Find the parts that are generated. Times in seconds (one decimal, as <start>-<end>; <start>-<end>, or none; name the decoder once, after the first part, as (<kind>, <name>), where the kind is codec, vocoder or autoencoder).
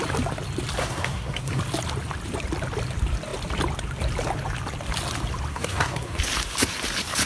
0.8-1.6 (codec, SNAC); 5.5-6.2